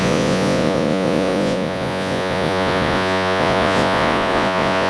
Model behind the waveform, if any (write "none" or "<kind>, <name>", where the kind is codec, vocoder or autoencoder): vocoder, Vocos